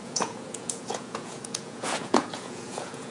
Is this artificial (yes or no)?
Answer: yes